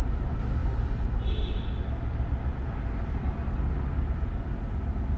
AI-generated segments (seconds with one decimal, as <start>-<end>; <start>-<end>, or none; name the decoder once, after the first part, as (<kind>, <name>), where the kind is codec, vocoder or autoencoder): none